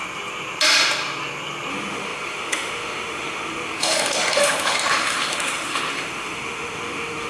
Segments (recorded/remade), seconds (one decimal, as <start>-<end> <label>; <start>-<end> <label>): 0.0-1.7 recorded; 1.7-7.3 remade